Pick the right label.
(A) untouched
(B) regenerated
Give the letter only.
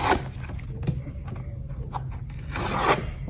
A